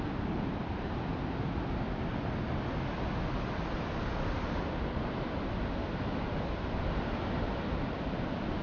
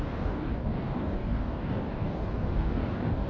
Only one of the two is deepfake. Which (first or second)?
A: second